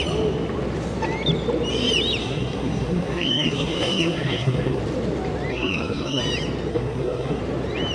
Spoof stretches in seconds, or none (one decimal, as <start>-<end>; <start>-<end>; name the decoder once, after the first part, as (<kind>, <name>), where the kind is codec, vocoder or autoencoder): 2.2-4.8 (codec, SNAC); 5.5-6.2; 6.7-7.4